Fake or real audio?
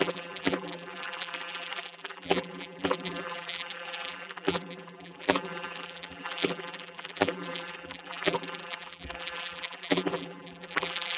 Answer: fake